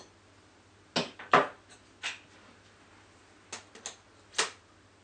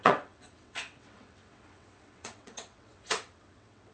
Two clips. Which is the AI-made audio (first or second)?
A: second